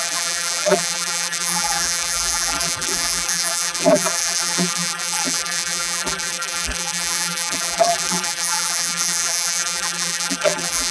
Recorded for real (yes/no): no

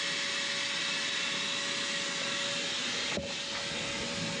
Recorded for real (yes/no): yes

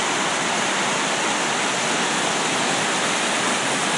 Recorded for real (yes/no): yes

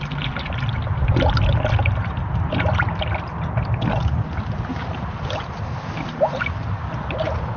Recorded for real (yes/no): yes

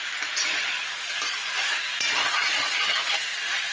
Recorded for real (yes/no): yes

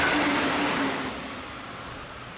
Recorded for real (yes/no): yes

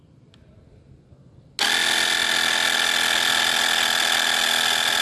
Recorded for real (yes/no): yes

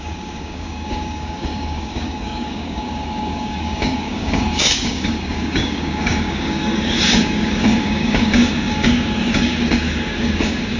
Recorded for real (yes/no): no